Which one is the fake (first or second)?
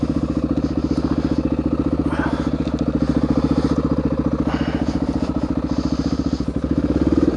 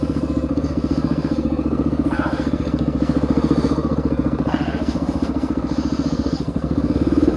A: second